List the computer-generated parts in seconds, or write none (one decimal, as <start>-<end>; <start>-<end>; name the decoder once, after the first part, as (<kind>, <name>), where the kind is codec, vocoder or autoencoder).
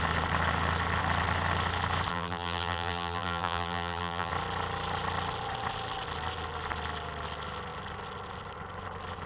2.1-4.3 (vocoder, BigVGAN v2)